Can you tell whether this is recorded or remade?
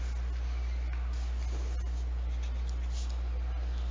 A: recorded